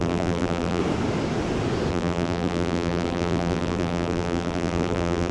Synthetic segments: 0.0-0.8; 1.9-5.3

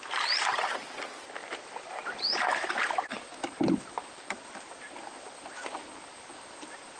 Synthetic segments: none

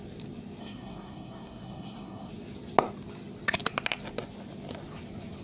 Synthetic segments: 0.6-2.3

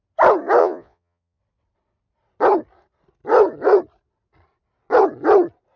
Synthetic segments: 0.6-1.4

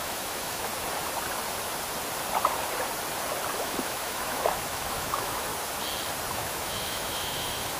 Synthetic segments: 0.0-0.7; 3.6-5.5; 6.3-7.8

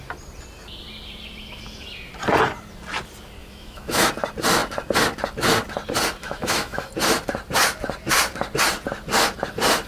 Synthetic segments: 3.4-4.1; 6.2-6.9